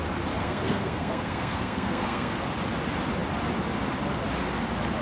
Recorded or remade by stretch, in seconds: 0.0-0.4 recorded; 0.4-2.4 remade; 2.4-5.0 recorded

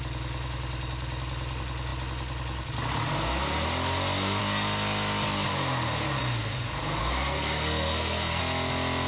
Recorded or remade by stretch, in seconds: 0.0-7.0 recorded; 7.0-8.4 remade; 8.4-9.1 recorded

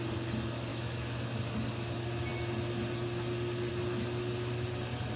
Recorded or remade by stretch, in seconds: 0.0-0.7 recorded; 0.7-1.4 remade; 1.4-5.2 recorded

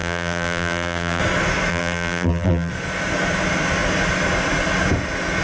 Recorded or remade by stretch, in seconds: 0.0-1.2 remade; 1.2-1.7 recorded; 1.7-2.7 remade; 2.7-5.4 recorded